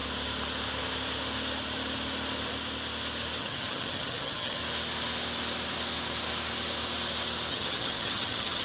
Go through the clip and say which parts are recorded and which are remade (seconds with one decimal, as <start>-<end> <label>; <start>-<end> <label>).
0.0-3.4 recorded; 3.4-4.6 remade; 4.6-7.5 recorded; 7.5-8.6 remade

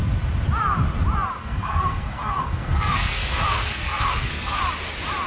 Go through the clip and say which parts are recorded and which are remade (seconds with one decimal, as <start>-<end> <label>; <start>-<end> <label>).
0.0-1.4 recorded; 1.4-4.6 remade; 4.6-5.3 recorded

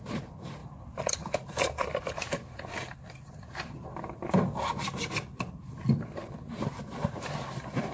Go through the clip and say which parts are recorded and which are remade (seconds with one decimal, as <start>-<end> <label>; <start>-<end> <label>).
0.0-0.6 recorded; 0.6-4.7 remade; 4.7-7.9 recorded

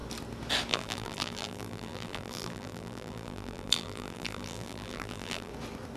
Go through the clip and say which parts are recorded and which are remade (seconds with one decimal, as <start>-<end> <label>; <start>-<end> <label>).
0.0-0.7 recorded; 0.7-5.5 remade; 5.5-6.0 recorded